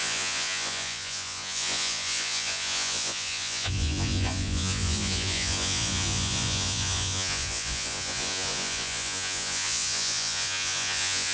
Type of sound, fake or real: fake